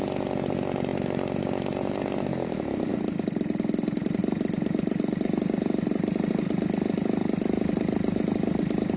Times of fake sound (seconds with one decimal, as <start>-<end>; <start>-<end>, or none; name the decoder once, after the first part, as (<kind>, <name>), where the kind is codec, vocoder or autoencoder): none

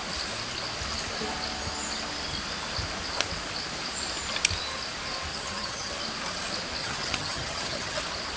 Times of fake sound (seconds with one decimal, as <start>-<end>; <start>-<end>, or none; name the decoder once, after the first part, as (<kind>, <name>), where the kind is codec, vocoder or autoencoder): 5.3-5.9 (vocoder, HiFi-GAN); 6.8-8.0

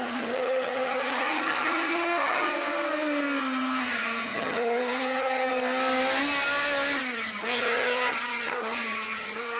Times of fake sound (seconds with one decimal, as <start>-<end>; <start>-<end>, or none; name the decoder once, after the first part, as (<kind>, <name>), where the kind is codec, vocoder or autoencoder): 0.0-2.5 (vocoder, HiFi-GAN); 3.4-5.5; 7.0-9.6